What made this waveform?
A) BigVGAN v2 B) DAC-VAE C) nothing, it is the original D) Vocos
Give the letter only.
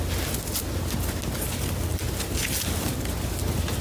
C